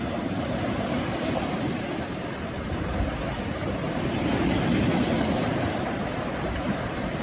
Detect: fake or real fake